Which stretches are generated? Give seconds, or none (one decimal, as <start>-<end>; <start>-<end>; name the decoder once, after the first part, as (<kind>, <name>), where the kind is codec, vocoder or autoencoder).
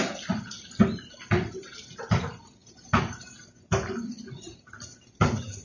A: none